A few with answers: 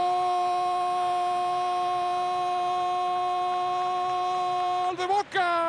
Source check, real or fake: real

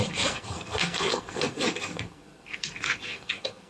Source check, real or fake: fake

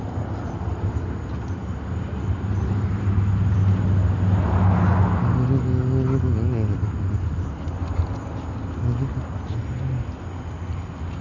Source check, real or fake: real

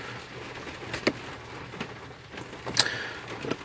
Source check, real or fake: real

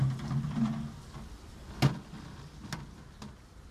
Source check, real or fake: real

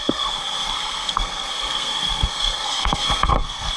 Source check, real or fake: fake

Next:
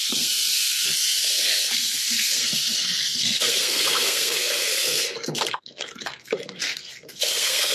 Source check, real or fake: fake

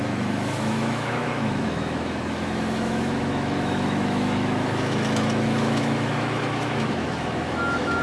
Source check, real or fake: fake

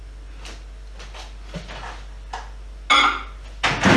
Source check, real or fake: real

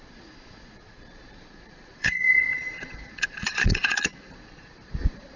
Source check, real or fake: fake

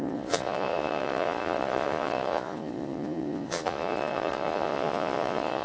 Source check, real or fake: fake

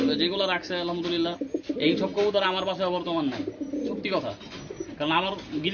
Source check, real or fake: real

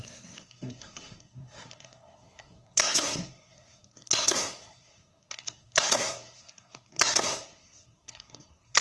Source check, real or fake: fake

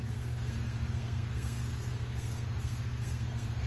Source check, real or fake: fake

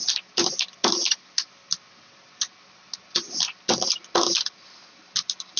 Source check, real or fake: real